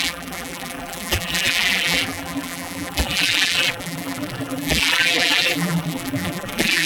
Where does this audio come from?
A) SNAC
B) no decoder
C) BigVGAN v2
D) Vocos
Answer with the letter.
C